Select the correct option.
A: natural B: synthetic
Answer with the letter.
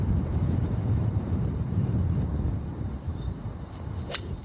B